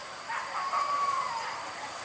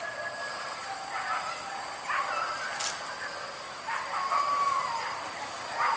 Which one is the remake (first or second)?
first